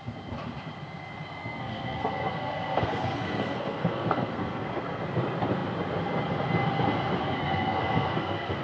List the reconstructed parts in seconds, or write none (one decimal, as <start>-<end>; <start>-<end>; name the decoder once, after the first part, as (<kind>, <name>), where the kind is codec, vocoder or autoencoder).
1.4-5.0 (codec, SNAC); 7.2-8.6